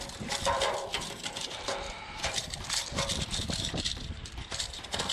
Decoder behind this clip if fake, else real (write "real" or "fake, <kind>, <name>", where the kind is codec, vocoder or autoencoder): fake, vocoder, BigVGAN v2